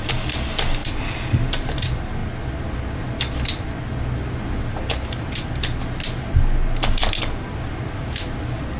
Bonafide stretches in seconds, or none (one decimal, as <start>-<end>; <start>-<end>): 0.0-0.8; 1.5-8.8